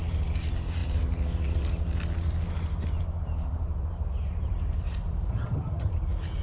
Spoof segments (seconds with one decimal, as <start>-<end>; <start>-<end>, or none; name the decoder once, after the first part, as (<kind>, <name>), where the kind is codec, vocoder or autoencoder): 5.3-5.9 (vocoder, HiFi-GAN)